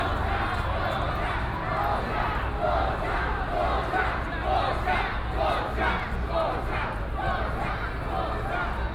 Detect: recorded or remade recorded